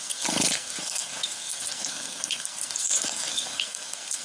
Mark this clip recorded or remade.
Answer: remade